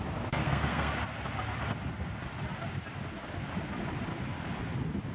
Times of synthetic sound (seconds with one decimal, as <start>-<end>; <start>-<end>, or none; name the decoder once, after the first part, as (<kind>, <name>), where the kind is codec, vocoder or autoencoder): 0.4-0.9 (codec, SNAC)